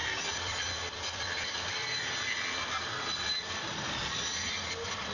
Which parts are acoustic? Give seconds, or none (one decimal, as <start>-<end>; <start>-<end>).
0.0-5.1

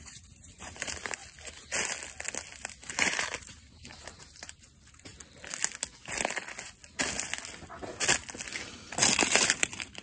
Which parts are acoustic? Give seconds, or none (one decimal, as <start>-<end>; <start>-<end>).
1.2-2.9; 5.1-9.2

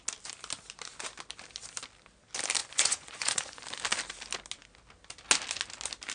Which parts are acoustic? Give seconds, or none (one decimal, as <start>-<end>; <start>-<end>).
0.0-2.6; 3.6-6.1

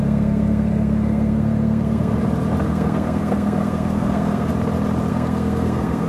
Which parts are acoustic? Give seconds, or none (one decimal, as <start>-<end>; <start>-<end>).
2.1-2.6; 4.5-5.1